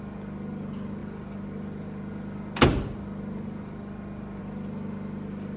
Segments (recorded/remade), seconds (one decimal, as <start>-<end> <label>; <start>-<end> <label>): 0.0-5.6 recorded